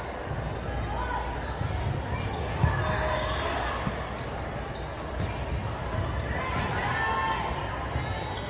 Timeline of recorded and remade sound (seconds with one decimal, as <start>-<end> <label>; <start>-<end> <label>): 0.0-5.6 recorded; 5.6-6.4 remade; 6.4-8.5 recorded